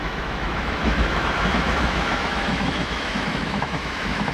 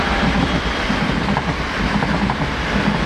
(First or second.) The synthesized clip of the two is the first